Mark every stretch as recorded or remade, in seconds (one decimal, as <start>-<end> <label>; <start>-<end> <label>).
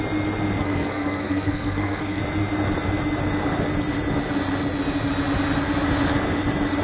0.0-0.6 recorded; 0.6-2.2 remade; 2.2-6.8 recorded